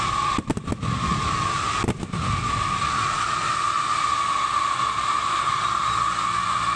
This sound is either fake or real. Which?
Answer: real